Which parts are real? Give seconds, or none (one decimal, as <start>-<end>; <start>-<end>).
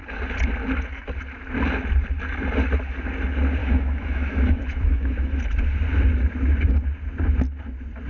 0.0-3.6; 5.4-8.1